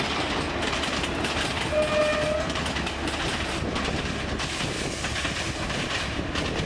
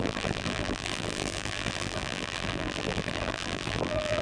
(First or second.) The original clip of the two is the first